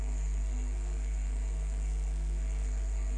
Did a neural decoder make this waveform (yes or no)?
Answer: yes